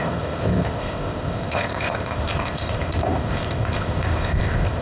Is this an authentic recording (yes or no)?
no